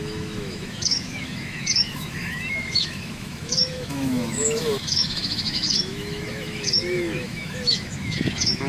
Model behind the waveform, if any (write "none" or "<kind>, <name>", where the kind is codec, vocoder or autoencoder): autoencoder, DAC-VAE